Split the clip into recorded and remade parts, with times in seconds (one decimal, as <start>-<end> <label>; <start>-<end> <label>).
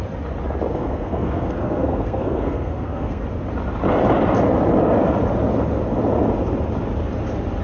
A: 0.0-0.7 recorded; 0.7-3.2 remade; 3.2-7.6 recorded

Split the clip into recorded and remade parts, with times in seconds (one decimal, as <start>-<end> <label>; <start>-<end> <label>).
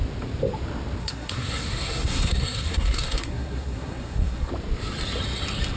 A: 0.0-1.0 recorded; 1.0-4.5 remade; 4.5-5.8 recorded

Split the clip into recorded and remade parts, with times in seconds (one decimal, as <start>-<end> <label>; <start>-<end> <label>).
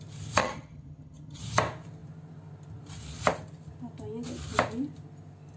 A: 0.0-0.4 recorded; 0.4-1.4 remade; 1.4-5.6 recorded